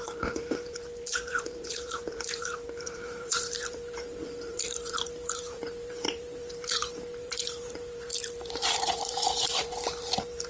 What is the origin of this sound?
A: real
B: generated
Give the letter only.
B